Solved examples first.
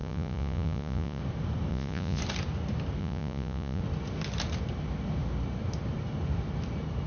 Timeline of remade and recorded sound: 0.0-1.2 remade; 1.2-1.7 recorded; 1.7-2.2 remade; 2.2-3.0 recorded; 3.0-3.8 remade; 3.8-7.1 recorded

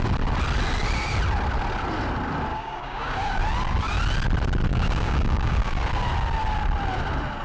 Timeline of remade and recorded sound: 0.0-2.5 recorded; 2.5-3.4 remade; 3.4-4.7 recorded; 4.7-5.7 remade; 5.7-7.4 recorded

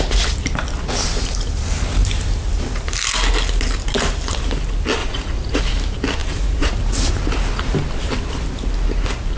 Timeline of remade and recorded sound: 0.0-5.0 recorded; 5.0-5.6 remade; 5.6-6.2 recorded; 6.2-6.7 remade; 6.7-9.4 recorded

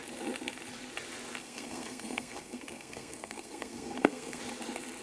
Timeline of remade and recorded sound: 0.0-1.4 recorded; 1.4-4.4 remade; 4.4-5.0 recorded

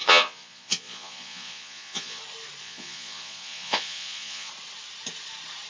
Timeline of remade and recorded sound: 0.0-2.2 remade; 2.2-2.6 recorded; 2.6-4.5 remade; 4.5-5.7 recorded